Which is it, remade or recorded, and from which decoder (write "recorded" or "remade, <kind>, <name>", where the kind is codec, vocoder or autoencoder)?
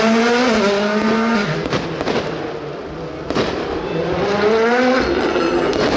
recorded